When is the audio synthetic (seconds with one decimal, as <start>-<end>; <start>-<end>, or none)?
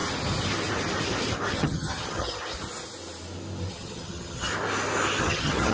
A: 1.5-2.4; 3.7-4.5; 5.2-5.7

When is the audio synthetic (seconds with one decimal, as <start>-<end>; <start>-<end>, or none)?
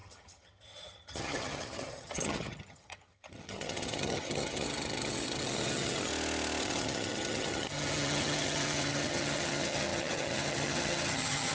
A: 0.0-6.1; 6.6-11.5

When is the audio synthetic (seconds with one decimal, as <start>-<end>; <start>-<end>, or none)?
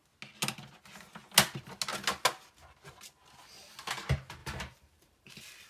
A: 4.4-5.7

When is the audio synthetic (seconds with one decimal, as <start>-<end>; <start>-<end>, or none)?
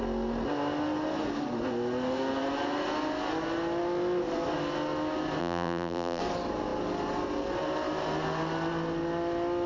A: 5.4-6.2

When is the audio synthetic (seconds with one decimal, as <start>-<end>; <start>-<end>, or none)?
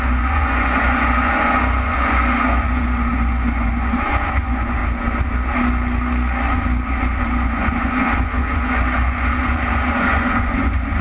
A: 0.0-4.8; 7.2-11.0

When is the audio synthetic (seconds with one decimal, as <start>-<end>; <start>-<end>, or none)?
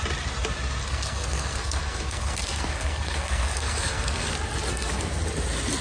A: 0.8-4.3; 4.7-5.2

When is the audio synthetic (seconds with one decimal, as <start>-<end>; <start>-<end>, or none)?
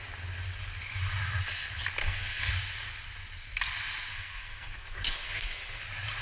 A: 2.0-2.5; 4.1-5.8